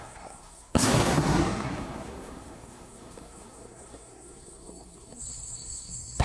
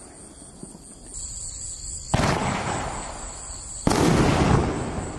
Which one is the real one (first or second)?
second